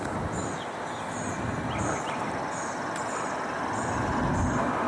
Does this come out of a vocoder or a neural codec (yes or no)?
no